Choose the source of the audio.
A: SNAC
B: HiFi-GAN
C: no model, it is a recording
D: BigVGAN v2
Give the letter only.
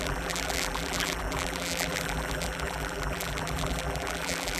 D